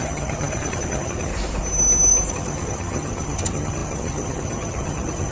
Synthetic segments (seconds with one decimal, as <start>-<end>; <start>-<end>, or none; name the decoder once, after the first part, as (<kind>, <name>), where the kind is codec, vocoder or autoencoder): 0.0-1.3 (vocoder, HiFi-GAN); 2.3-5.3